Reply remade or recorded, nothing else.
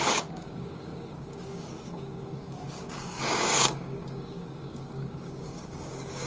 remade